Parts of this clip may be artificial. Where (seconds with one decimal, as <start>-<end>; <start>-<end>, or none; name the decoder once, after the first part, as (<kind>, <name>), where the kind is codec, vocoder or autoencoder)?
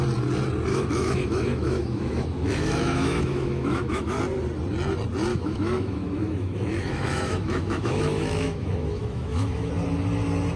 0.7-4.2 (autoencoder, DAC-VAE); 5.3-9.7